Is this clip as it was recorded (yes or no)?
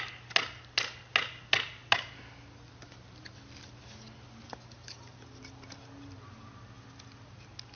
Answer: yes